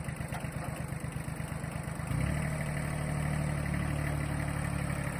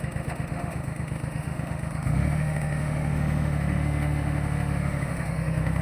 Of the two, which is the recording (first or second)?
first